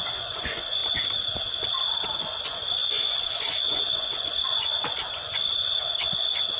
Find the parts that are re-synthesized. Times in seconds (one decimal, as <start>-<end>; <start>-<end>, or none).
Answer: 0.0-0.8; 2.2-6.6